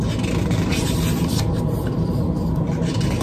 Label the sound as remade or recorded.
recorded